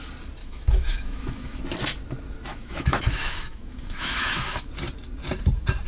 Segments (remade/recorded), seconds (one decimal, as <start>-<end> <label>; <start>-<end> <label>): 0.0-0.4 recorded; 0.4-1.6 remade; 1.6-2.5 recorded; 2.5-4.7 remade; 4.7-5.9 recorded